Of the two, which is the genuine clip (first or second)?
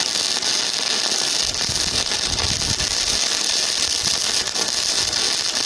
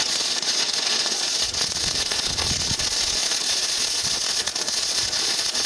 first